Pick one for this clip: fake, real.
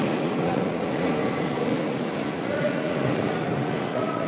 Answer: fake